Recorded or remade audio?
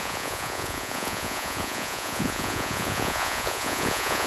remade